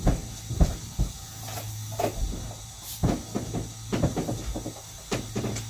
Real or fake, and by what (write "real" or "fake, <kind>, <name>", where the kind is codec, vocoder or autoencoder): real